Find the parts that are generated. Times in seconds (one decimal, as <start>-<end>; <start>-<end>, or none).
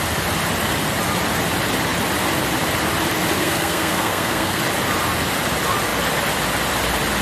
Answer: 3.4-4.6